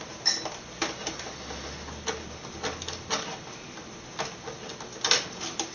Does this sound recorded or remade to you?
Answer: recorded